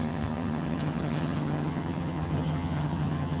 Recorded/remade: remade